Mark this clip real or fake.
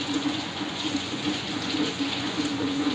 fake